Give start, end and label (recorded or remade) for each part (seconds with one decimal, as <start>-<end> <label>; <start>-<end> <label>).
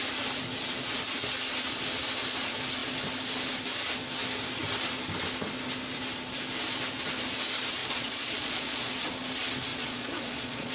0.0-7.8 recorded; 7.8-8.9 remade; 8.9-9.7 recorded; 9.7-10.7 remade